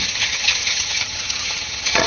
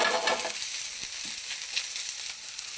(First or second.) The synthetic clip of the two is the first